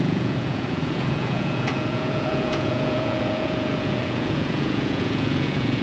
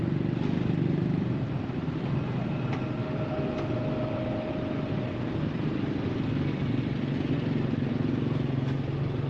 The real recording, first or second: second